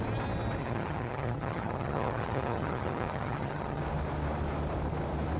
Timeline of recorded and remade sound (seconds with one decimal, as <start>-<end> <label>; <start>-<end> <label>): 0.0-0.6 recorded; 0.6-3.8 remade; 3.8-5.4 recorded